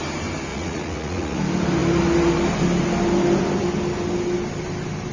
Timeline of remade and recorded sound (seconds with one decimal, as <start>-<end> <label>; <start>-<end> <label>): 0.0-0.5 recorded; 0.5-1.4 remade; 1.4-5.1 recorded